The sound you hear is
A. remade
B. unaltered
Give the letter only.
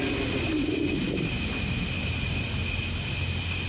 B